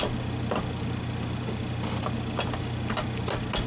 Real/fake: real